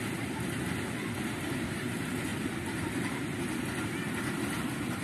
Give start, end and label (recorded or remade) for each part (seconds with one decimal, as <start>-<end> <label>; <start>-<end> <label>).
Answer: 0.0-2.3 recorded; 2.3-3.4 remade; 3.4-5.0 recorded